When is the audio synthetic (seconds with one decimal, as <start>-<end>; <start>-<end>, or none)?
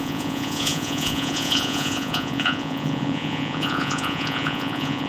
0.0-5.1